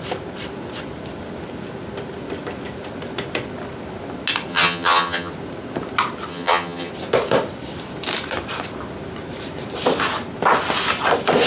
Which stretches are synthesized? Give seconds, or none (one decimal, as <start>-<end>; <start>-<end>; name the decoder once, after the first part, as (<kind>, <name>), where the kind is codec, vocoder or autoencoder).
4.5-5.3 (vocoder, HiFi-GAN); 6.3-6.9

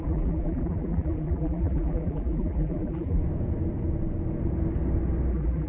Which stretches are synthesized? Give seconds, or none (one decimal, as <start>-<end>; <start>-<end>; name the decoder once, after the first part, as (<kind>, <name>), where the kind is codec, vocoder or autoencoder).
0.0-3.2 (vocoder, BigVGAN v2); 5.3-5.7

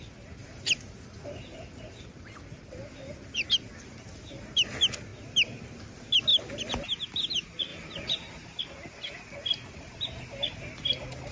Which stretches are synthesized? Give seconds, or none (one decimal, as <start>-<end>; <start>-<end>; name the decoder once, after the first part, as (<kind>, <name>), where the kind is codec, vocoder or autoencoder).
none

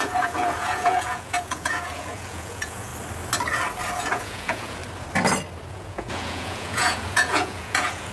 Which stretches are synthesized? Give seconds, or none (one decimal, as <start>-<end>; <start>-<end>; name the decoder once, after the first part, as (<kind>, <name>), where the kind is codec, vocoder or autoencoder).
0.0-2.9 (vocoder, Vocos); 4.0-4.8; 5.7-8.1

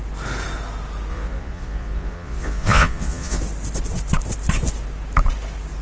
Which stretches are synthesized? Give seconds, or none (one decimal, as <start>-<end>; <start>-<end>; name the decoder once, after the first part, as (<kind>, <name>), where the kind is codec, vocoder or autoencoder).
1.1-3.4 (vocoder, Vocos)